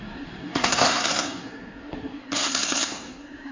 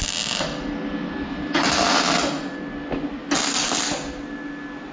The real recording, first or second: second